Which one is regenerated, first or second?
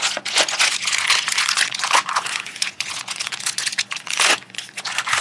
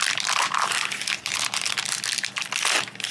first